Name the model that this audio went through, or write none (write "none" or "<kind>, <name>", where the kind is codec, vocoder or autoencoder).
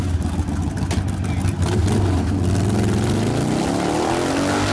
none